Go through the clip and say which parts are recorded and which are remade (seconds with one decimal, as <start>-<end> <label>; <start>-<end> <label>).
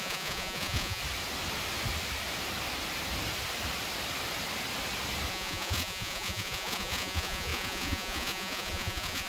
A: 0.0-1.0 remade; 1.0-5.3 recorded; 5.3-9.3 remade